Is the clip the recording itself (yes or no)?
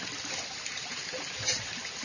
yes